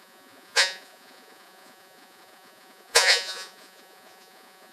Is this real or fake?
fake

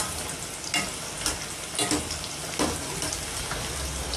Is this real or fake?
real